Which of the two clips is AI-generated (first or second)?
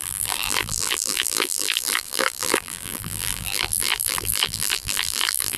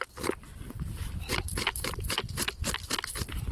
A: first